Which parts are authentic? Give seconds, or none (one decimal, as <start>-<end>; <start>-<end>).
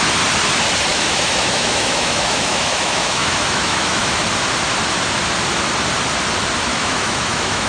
0.0-0.9; 4.2-6.7